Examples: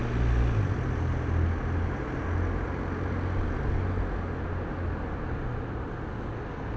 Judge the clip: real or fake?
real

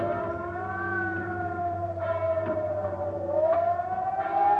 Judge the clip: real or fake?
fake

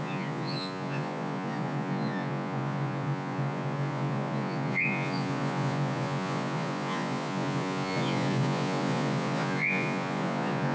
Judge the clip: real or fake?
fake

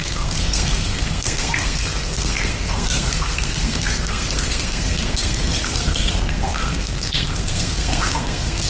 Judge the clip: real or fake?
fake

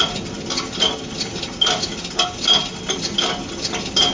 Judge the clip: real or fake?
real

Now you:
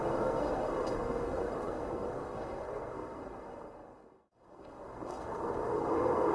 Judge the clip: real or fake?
fake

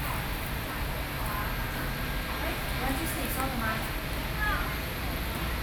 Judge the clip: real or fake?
real